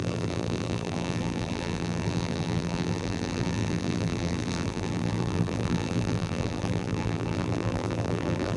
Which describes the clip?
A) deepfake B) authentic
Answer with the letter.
A